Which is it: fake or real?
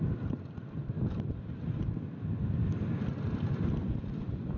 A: real